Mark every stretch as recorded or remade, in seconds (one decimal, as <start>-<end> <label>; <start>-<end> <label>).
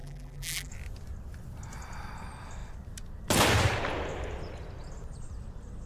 0.0-0.7 remade; 0.7-5.9 recorded